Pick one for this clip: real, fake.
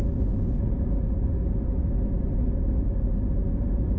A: real